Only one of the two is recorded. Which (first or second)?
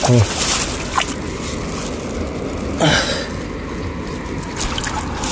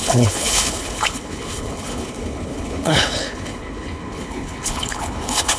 first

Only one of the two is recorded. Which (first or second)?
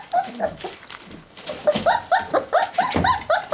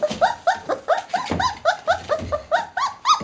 second